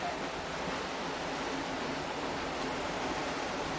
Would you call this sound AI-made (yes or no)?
no